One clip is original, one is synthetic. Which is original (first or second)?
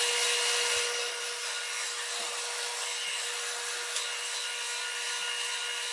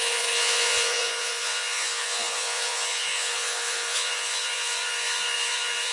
first